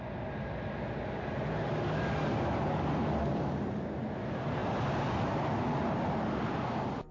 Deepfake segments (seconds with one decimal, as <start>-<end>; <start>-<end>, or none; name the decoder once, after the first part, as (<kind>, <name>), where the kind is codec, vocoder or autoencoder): none